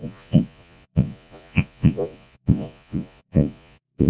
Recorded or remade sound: remade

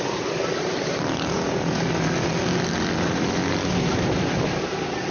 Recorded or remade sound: recorded